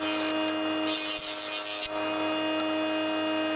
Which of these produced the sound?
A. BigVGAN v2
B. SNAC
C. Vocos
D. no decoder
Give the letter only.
D